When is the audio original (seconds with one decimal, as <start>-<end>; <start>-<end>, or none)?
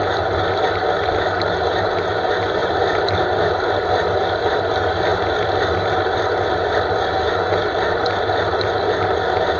0.0-2.6; 3.2-9.6